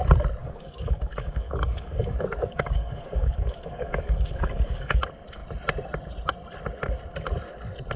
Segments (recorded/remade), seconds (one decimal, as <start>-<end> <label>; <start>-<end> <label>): 0.0-0.4 recorded; 0.4-5.0 remade; 5.0-8.0 recorded